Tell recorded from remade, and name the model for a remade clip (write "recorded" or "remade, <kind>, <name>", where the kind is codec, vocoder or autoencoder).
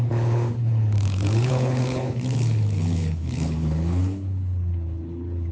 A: remade, codec, HILCodec